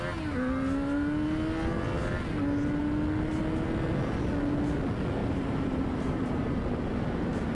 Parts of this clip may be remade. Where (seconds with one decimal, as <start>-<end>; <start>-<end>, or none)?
5.2-6.6